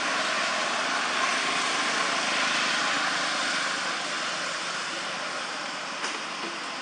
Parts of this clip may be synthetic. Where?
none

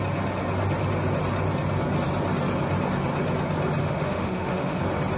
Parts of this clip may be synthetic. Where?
3.8-4.8 (autoencoder, DAC-VAE)

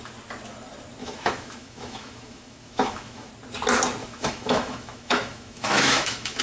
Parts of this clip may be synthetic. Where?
1.0-3.3 (autoencoder, DAC-VAE); 4.0-6.4

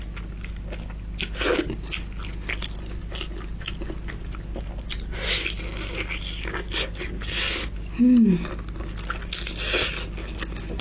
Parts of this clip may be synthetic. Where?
none

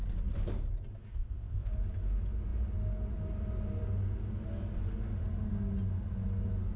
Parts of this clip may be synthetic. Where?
1.1-1.7 (codec, ZipCodec)

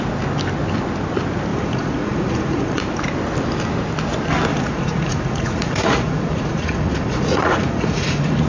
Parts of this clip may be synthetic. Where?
1.5-2.8 (vocoder, Vocos); 4.5-8.5

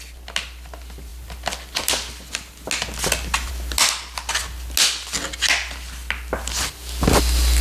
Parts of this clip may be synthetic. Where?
none

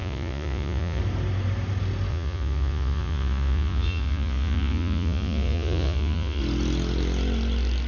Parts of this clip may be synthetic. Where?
0.0-1.0 (vocoder, Vocos); 2.1-6.4